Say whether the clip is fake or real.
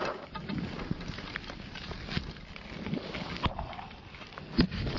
real